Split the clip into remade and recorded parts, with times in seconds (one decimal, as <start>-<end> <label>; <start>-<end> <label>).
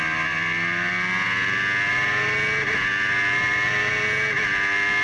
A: 0.0-5.0 recorded